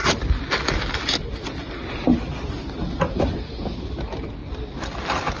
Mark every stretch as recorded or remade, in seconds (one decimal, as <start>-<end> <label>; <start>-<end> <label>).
0.0-4.4 recorded; 4.4-5.4 remade